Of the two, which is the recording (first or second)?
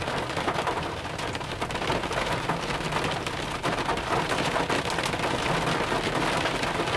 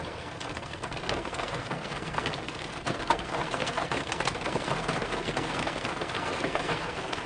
first